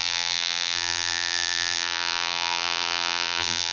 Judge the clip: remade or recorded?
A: remade